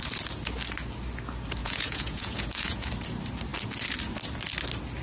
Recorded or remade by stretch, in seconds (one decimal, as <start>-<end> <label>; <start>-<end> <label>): 0.0-1.6 recorded; 1.6-2.9 remade; 2.9-5.0 recorded